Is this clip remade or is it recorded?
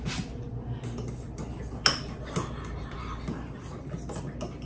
recorded